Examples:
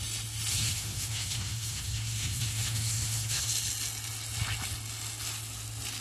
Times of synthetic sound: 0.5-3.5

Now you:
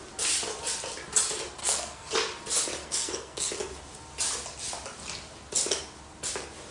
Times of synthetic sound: 1.6-2.1; 2.8-3.5

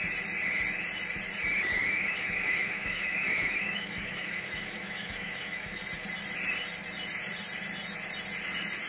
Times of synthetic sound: 1.8-5.8

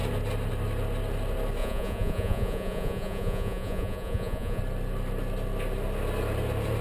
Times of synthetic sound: 1.6-4.6

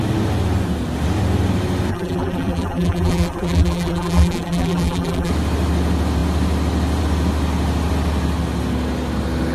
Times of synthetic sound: 1.9-5.3

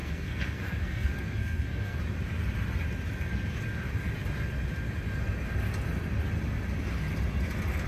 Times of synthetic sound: 0.0-2.0

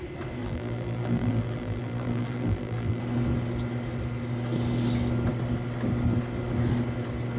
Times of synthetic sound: 0.4-3.0

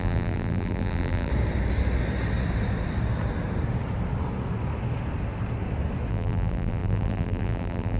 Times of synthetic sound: 0.0-1.3; 6.1-8.0